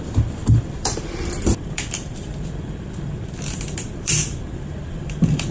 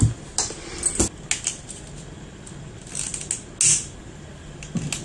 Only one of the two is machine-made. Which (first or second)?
first